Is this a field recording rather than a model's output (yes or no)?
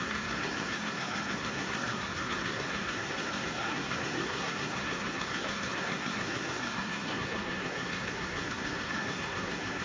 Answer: no